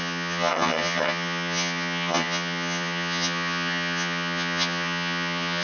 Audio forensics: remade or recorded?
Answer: remade